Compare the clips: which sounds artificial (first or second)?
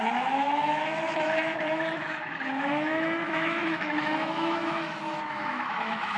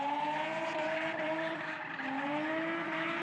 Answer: first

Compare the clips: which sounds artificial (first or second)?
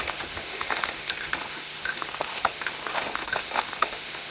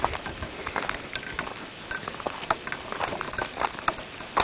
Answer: first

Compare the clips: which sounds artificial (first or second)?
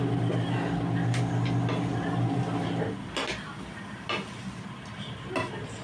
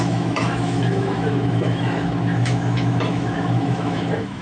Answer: second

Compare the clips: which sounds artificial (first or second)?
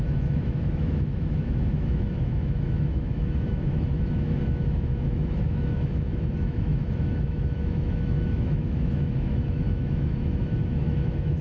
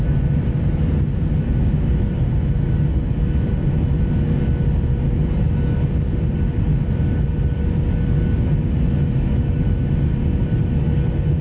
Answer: first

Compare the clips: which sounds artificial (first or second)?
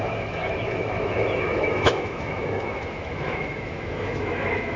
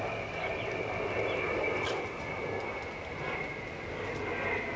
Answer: first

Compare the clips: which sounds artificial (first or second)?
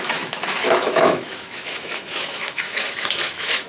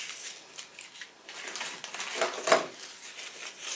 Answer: first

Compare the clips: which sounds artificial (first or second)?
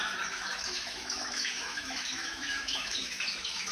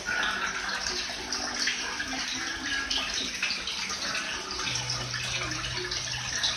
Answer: first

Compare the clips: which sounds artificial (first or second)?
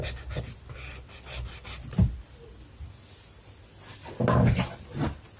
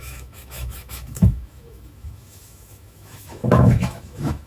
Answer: second